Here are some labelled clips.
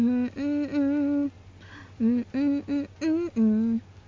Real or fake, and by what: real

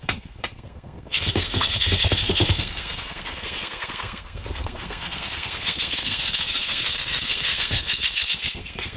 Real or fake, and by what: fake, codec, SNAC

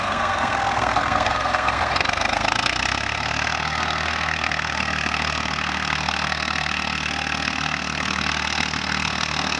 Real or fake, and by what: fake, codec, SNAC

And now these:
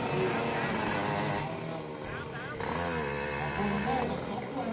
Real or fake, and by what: real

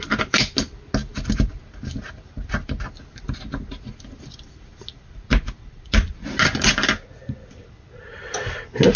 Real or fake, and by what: real